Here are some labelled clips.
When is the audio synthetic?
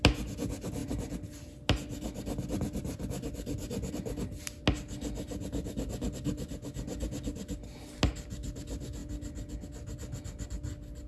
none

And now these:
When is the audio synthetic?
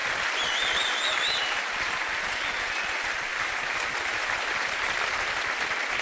none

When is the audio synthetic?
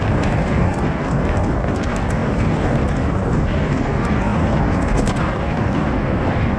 0.0-6.6